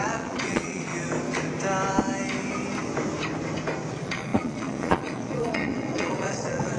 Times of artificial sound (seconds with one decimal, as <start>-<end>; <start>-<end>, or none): 0.0-0.9; 3.9-6.8